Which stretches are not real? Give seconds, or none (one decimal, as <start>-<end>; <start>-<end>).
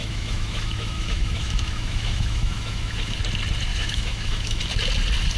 0.0-3.2; 3.7-4.6